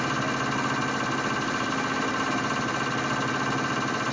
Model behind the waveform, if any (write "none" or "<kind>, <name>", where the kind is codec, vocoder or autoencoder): none